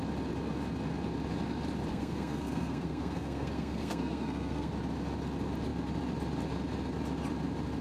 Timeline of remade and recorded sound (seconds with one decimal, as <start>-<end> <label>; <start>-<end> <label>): 0.0-1.9 recorded; 1.9-4.7 remade; 4.7-7.8 recorded